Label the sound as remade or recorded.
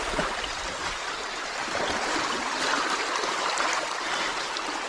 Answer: remade